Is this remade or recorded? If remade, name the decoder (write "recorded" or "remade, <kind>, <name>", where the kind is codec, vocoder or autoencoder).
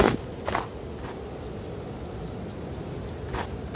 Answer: recorded